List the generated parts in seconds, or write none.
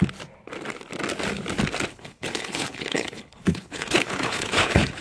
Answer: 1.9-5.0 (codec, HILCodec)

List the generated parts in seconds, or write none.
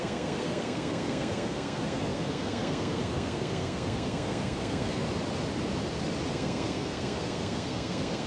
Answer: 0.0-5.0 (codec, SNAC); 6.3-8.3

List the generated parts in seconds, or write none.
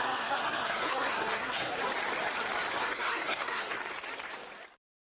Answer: 0.0-1.7 (codec, SNAC); 2.8-3.8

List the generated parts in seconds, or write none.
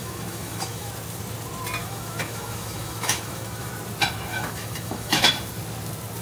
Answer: 0.0-0.9 (autoencoder, DAC-VAE); 1.8-3.7; 4.3-5.3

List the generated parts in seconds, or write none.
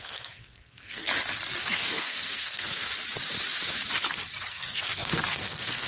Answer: 0.0-1.1 (codec, SNAC); 1.6-2.9; 4.5-5.9